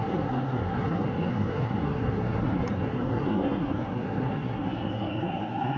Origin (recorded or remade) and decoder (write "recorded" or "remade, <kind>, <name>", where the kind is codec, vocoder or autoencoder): remade, codec, SNAC